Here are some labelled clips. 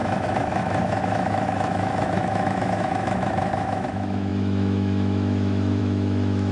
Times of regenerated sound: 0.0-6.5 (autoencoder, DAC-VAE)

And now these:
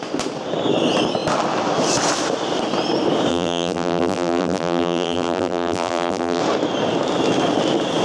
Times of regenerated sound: 3.3-6.4 (vocoder, BigVGAN v2)

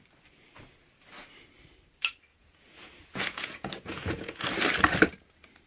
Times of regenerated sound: 2.3-4.4 (vocoder, Vocos)